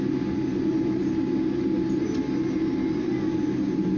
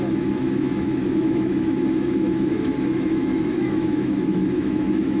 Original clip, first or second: first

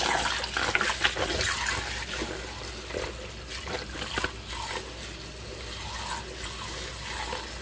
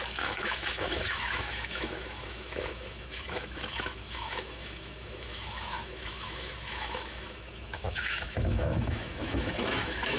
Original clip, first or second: first